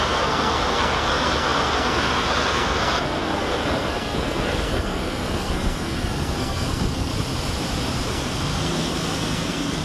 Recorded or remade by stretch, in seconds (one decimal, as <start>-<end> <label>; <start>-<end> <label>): 0.0-7.1 remade; 7.1-8.1 recorded; 8.1-9.8 remade